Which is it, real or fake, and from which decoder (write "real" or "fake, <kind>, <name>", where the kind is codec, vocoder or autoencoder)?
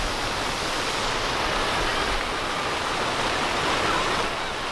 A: real